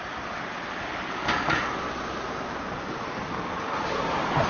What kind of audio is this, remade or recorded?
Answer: recorded